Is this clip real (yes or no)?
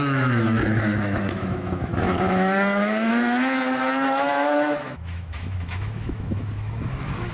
no